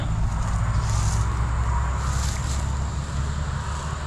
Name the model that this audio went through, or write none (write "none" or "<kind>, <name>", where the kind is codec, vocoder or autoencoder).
none